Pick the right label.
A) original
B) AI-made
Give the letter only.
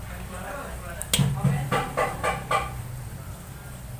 A